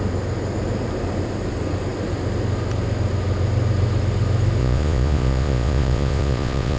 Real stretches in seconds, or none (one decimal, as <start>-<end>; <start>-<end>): 0.0-4.6